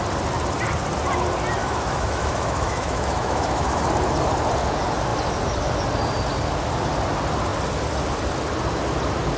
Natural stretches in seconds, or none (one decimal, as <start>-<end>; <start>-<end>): 0.0-1.6; 3.9-9.4